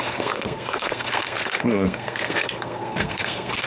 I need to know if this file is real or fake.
fake